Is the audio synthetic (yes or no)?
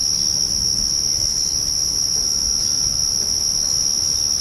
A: no